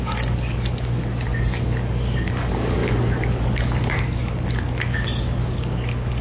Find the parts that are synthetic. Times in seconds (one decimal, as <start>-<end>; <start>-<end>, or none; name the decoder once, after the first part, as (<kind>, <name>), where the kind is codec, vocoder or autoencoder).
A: 0.0-6.2 (codec, DAC)